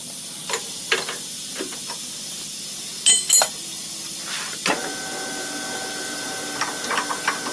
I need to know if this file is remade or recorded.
recorded